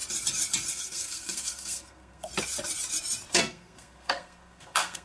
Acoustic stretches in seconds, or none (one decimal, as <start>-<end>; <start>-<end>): 0.0-0.7; 2.3-3.3